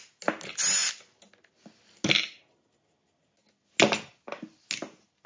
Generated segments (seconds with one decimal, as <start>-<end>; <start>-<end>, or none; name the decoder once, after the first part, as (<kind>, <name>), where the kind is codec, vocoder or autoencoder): none